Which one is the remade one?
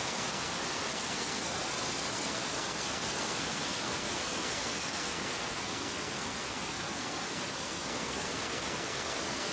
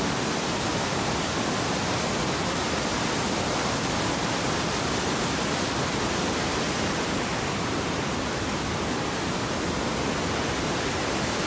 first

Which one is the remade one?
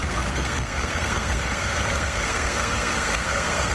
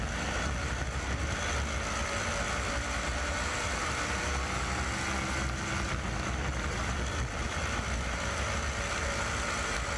first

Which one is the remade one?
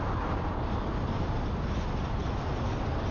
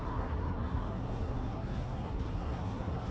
second